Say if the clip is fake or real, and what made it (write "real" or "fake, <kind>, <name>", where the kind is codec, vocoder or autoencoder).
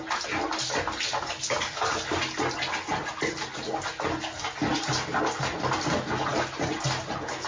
real